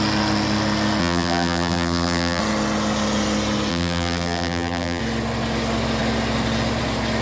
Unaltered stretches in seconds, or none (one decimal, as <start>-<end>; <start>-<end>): 0.0-1.0; 2.4-3.7; 5.0-7.2